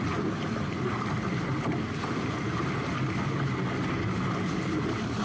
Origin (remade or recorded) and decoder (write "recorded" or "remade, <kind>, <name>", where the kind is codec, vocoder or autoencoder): recorded